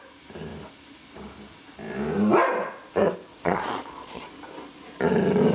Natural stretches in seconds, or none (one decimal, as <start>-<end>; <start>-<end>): 0.0-3.3; 4.3-5.5